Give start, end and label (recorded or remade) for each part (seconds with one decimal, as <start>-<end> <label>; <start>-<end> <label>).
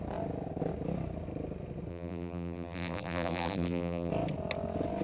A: 0.0-1.9 recorded; 1.9-4.1 remade; 4.1-5.0 recorded